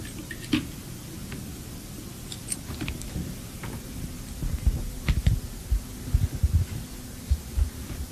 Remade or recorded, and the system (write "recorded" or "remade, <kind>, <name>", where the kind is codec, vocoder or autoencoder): recorded